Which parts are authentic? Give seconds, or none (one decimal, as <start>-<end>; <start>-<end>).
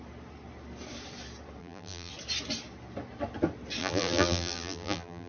0.0-1.6; 2.1-3.8